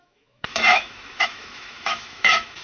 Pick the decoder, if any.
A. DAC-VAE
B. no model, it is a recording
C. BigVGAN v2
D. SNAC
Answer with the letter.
A